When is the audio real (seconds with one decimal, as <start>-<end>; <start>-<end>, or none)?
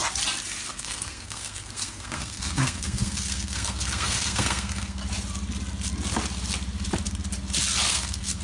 0.0-0.7; 5.0-7.9